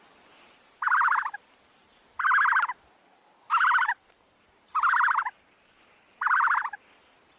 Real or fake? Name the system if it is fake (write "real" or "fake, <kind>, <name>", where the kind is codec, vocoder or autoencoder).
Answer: fake, vocoder, BigVGAN v2